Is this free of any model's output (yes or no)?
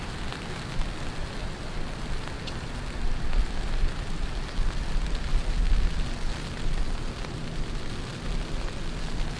yes